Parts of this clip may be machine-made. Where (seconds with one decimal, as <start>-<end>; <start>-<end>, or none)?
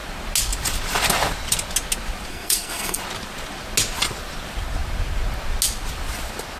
2.3-3.0